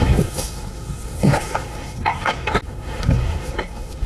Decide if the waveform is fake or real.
fake